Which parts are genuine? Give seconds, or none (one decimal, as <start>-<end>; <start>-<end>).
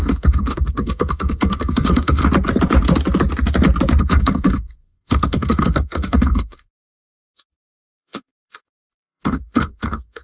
2.2-4.0